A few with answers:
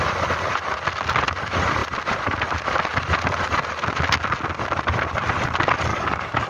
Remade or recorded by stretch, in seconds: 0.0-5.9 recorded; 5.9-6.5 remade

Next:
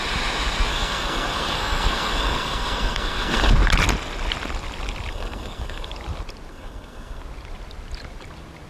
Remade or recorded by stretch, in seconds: 0.0-0.7 recorded; 0.7-3.5 remade; 3.5-5.1 recorded; 5.1-5.9 remade; 5.9-6.5 recorded; 6.5-7.2 remade; 7.2-8.7 recorded